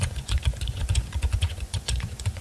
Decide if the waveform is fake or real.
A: fake